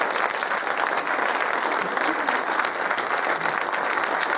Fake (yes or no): no